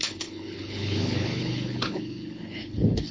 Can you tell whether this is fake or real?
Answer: fake